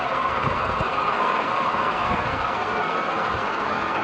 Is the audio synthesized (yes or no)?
yes